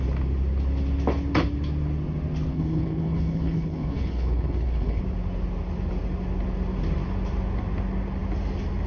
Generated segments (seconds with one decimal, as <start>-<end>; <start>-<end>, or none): 2.5-5.0